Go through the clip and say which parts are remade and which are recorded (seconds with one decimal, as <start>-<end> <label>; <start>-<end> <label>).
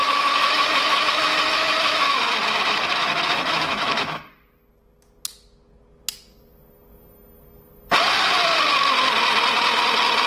0.0-4.3 remade; 4.3-10.3 recorded